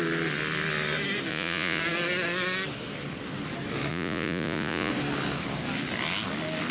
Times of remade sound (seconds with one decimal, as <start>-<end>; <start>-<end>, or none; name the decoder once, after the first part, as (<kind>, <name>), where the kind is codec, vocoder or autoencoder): 1.3-1.8 (vocoder, Vocos); 3.9-4.9